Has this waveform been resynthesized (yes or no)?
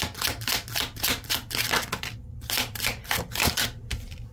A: no